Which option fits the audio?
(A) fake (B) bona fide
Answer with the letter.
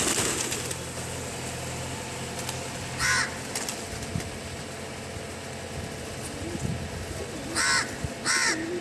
B